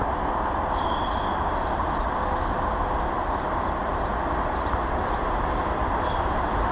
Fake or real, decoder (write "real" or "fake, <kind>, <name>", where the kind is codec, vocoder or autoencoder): real